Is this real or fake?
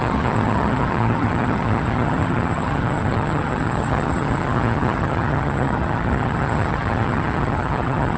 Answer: fake